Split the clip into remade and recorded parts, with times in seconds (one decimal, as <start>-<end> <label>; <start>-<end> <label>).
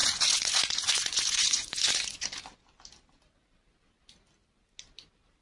0.0-2.4 remade; 2.4-5.4 recorded